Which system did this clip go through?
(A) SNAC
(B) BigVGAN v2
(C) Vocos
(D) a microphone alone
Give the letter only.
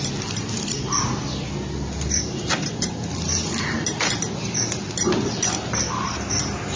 D